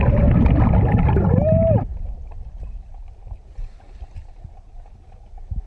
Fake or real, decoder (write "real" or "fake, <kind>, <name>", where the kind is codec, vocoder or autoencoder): real